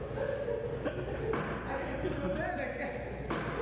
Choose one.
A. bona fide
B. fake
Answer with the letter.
A